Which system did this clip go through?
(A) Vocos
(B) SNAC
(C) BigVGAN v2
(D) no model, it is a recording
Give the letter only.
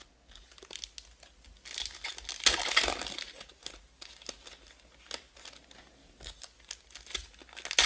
D